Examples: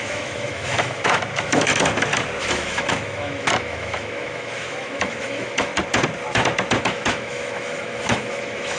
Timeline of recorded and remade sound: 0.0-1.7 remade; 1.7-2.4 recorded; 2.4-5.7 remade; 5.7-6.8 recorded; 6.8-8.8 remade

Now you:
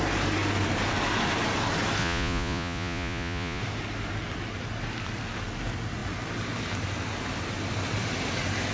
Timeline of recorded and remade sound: 0.0-2.0 recorded; 2.0-3.6 remade; 3.6-8.7 recorded

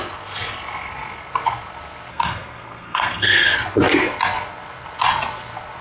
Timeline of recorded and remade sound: 0.0-2.1 recorded; 2.1-3.5 remade; 3.5-5.8 recorded